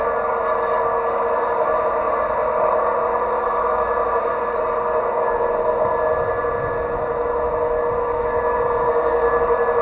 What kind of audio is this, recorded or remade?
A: recorded